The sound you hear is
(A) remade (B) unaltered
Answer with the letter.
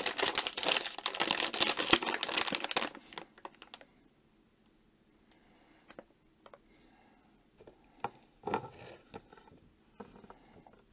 B